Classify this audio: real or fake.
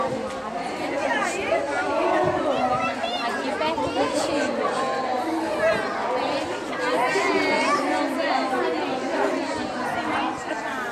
real